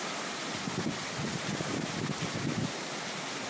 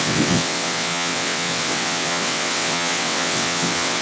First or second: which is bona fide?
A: first